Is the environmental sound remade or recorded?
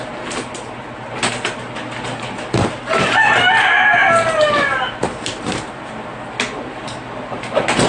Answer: recorded